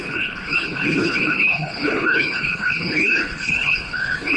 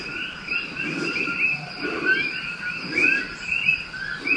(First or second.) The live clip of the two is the second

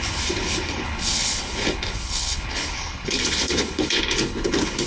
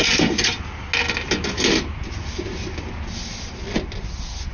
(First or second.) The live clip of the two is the second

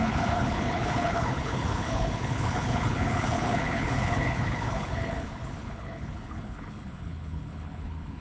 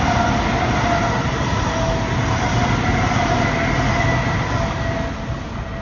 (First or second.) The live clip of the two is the second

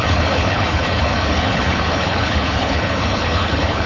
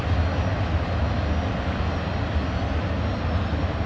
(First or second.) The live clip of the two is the second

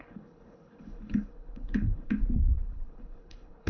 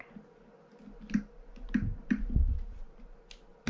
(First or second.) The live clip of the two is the second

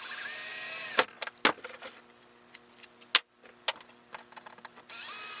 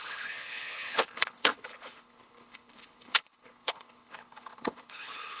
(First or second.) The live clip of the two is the first